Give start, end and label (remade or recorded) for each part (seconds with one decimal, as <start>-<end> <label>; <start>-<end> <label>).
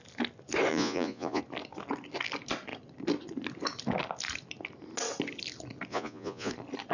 0.0-0.7 recorded; 0.7-1.4 remade; 1.4-5.9 recorded; 5.9-6.5 remade; 6.5-6.9 recorded